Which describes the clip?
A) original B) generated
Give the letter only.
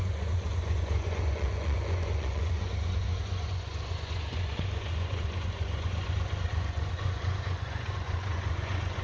B